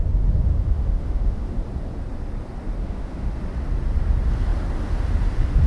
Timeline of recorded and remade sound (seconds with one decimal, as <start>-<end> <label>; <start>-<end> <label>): 0.0-0.5 recorded; 0.5-1.6 remade; 1.6-2.8 recorded; 2.8-3.3 remade; 3.3-5.7 recorded